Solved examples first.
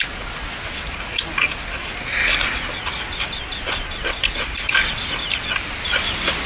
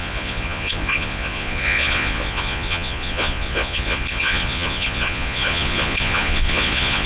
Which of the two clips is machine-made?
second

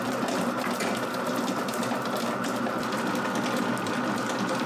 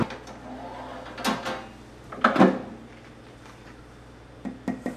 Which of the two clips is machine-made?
first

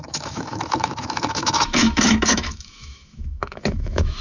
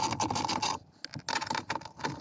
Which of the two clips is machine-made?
first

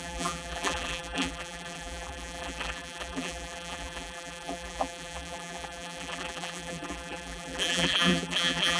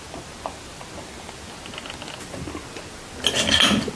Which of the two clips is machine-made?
first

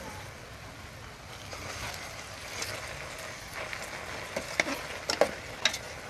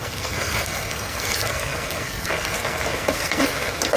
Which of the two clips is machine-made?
second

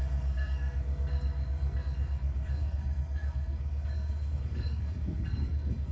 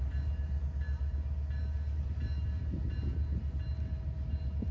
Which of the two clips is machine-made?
first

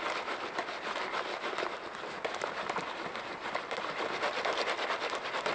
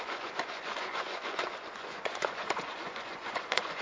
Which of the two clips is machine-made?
second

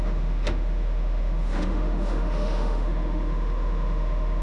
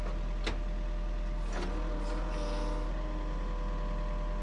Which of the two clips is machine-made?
first